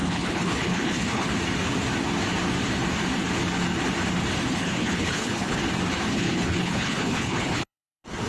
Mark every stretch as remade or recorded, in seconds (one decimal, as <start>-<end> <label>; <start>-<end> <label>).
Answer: 0.0-1.3 remade; 1.3-4.5 recorded; 4.5-5.6 remade; 5.6-6.1 recorded; 6.1-8.3 remade